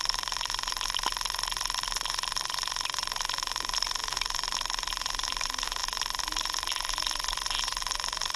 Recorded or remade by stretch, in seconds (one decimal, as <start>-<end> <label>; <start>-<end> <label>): 0.0-8.4 recorded